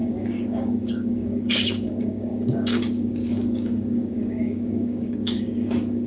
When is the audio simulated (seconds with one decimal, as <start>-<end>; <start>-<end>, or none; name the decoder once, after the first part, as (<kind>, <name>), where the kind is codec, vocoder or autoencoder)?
0.0-6.1 (codec, DAC)